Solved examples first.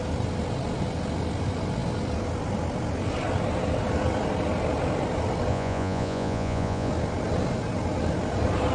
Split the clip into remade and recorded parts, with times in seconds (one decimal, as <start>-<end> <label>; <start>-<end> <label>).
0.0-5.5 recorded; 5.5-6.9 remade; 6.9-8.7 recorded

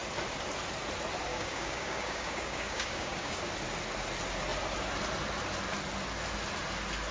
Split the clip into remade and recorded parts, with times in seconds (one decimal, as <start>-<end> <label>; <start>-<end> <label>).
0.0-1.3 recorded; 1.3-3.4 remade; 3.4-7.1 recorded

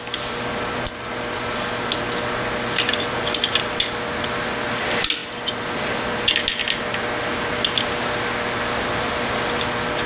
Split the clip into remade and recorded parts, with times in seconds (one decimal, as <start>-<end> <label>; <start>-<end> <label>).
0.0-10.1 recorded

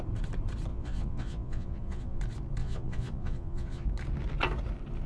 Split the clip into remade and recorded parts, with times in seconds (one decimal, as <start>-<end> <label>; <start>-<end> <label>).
0.0-0.7 recorded; 0.7-2.2 remade; 2.2-2.6 recorded; 2.6-3.9 remade; 3.9-5.1 recorded